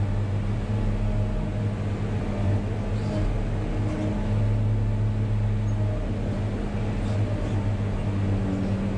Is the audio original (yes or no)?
yes